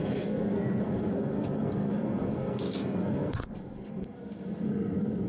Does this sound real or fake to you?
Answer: fake